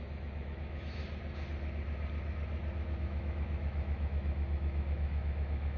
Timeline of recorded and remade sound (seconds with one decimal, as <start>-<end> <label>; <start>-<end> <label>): 0.0-1.0 remade; 1.0-3.0 recorded; 3.0-5.8 remade